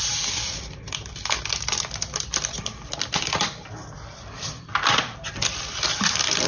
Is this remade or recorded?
remade